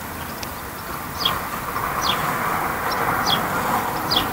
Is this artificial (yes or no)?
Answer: no